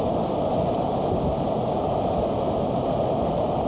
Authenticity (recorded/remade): recorded